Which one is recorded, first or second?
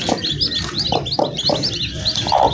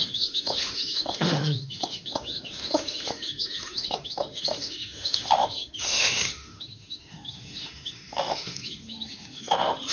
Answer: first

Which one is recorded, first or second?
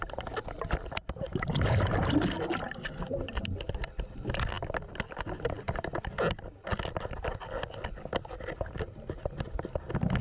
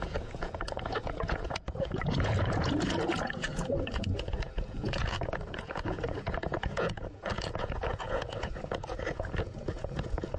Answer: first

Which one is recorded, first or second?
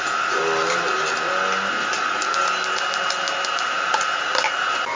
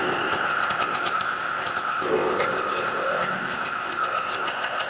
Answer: first